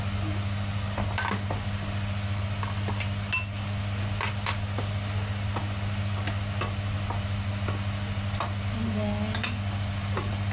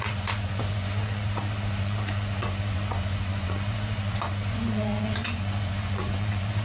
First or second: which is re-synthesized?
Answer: second